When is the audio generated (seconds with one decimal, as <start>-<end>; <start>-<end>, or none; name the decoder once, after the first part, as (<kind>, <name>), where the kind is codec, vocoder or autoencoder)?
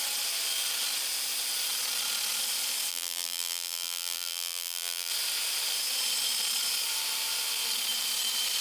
2.9-5.1 (vocoder, BigVGAN v2)